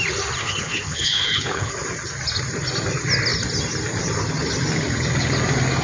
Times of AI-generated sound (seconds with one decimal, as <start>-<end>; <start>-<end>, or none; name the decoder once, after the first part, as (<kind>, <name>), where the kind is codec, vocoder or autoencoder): 0.4-1.7 (codec, HILCodec)